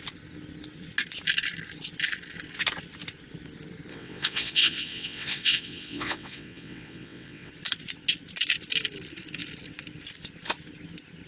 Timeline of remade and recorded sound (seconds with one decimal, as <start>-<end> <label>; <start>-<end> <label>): 0.0-3.9 recorded; 3.9-7.5 remade; 7.5-11.3 recorded